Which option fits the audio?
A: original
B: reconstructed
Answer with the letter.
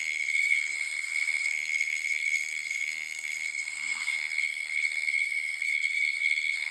B